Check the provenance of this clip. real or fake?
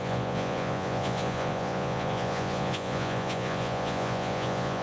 fake